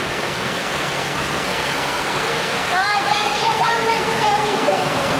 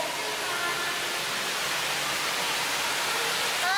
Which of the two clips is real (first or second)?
second